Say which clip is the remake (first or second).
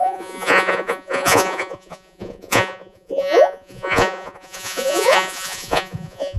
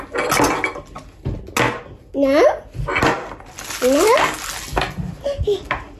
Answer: first